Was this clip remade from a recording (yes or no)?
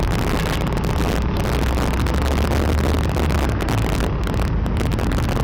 no